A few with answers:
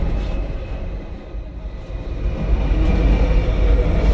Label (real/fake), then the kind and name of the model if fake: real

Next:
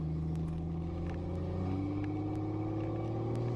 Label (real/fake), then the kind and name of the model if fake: real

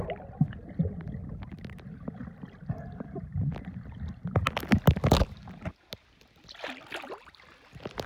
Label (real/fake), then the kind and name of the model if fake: real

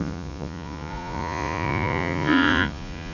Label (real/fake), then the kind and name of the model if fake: fake, vocoder, Vocos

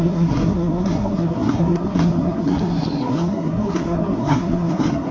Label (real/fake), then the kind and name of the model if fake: fake, codec, SNAC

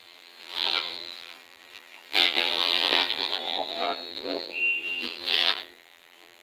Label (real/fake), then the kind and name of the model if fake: fake, vocoder, BigVGAN v2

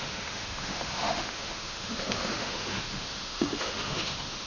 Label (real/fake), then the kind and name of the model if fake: fake, autoencoder, DAC-VAE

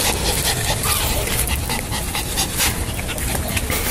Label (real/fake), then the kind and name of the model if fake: real